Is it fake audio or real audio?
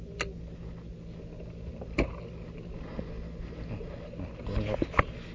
real